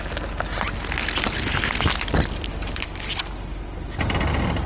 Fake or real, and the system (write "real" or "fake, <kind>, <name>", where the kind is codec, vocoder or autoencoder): real